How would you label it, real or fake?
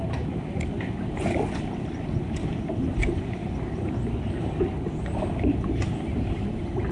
real